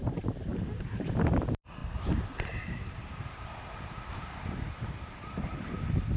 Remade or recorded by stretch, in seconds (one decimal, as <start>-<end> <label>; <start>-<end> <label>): 0.0-0.5 recorded; 0.5-1.1 remade; 1.1-1.8 recorded; 1.8-5.5 remade; 5.5-6.2 recorded